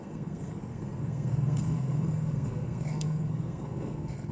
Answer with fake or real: fake